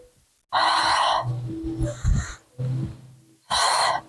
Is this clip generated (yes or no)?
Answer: no